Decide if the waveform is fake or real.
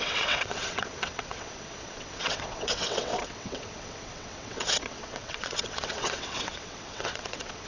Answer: fake